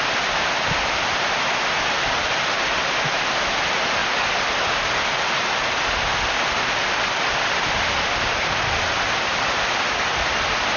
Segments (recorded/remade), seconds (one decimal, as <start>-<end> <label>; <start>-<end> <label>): 0.0-10.8 recorded